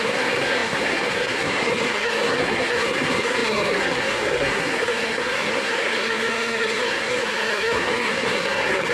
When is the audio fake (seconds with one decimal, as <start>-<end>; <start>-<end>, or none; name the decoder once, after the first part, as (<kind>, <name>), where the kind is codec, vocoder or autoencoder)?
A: 0.0-8.9 (codec, SNAC)